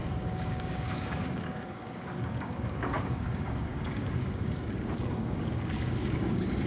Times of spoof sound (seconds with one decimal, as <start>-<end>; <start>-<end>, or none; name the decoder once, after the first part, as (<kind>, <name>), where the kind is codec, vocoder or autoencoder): 0.0-6.7 (codec, DAC)